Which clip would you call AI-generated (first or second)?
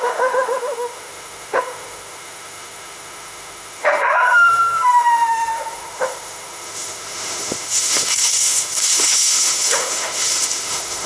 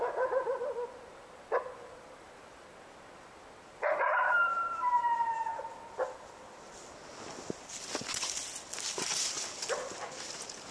first